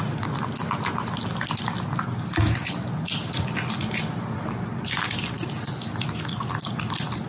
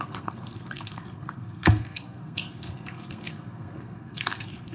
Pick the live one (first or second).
first